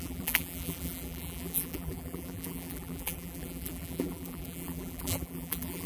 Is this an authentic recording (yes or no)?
no